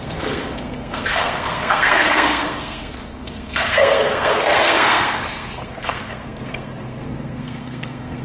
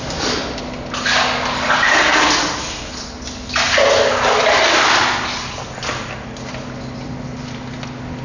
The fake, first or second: first